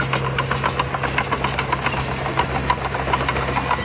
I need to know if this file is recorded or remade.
recorded